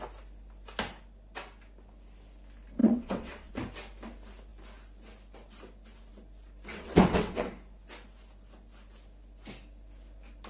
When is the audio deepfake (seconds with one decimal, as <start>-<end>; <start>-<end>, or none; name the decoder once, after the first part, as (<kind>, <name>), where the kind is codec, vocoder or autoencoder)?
2.8-3.5 (vocoder, WaveNeXt); 6.7-7.5